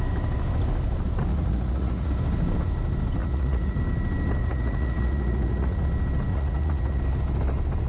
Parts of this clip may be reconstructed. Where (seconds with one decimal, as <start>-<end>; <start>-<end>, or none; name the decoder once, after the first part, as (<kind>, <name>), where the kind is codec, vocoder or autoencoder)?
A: 1.3-2.1 (vocoder, Vocos); 3.2-3.8; 4.4-5.8; 6.3-7.0